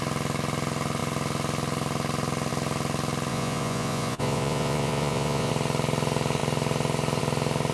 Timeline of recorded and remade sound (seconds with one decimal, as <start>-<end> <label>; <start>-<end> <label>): 0.0-3.3 recorded; 3.3-5.5 remade; 5.5-7.7 recorded